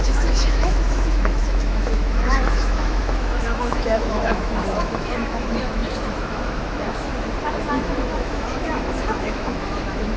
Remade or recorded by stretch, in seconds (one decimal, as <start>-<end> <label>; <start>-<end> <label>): 0.0-7.1 remade; 7.1-7.6 recorded; 7.6-10.2 remade